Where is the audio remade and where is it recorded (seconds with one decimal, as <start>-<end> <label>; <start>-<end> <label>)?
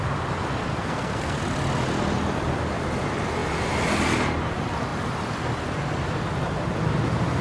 0.0-0.7 recorded; 0.7-1.4 remade; 1.4-7.4 recorded